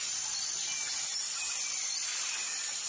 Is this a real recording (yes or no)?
yes